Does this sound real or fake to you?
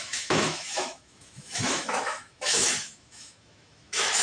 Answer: fake